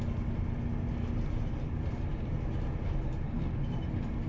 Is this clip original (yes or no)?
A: yes